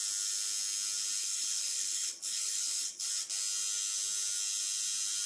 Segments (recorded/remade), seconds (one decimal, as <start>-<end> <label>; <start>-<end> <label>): 0.0-1.2 recorded; 1.2-3.1 remade; 3.1-5.3 recorded

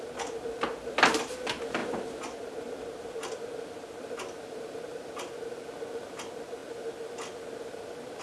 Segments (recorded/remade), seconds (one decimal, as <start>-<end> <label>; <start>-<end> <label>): 0.0-8.2 recorded

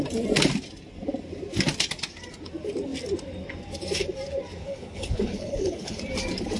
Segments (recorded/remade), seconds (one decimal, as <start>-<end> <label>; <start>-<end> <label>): 0.0-4.6 recorded; 4.6-6.0 remade; 6.0-6.6 recorded

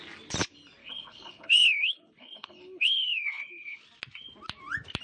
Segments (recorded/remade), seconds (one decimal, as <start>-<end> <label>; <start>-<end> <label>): 0.0-0.8 recorded; 0.8-3.8 remade; 3.8-5.0 recorded

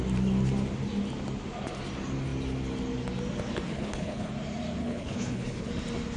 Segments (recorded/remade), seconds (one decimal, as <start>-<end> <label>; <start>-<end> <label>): 0.0-3.7 recorded; 3.7-4.3 remade; 4.3-4.8 recorded; 4.8-5.7 remade; 5.7-6.2 recorded

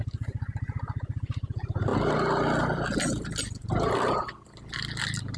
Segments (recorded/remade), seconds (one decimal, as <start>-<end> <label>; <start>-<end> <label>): 0.0-5.4 recorded

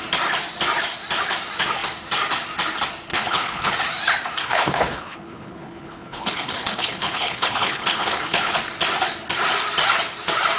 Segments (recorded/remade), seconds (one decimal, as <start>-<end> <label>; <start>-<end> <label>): 0.0-3.1 recorded; 3.1-3.7 remade; 3.7-4.4 recorded; 4.4-8.6 remade; 8.6-10.6 recorded

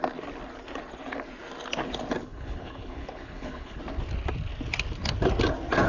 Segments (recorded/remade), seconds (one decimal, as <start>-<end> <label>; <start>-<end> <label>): 0.0-2.2 recorded; 2.2-3.8 remade; 3.8-5.9 recorded